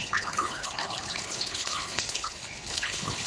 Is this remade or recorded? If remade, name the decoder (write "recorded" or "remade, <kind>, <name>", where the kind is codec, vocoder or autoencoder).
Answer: remade, codec, HILCodec